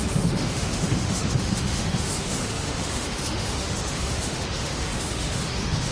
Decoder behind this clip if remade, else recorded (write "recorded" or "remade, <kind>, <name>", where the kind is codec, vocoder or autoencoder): remade, autoencoder, DAC-VAE